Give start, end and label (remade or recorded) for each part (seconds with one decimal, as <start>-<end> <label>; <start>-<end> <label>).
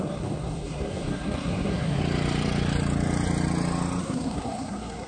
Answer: 0.0-2.0 remade; 2.0-4.0 recorded; 4.0-5.1 remade